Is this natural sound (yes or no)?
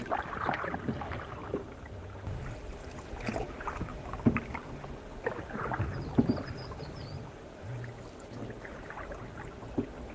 yes